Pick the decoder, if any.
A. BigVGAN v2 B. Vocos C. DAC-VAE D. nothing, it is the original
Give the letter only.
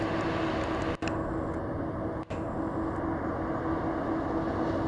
D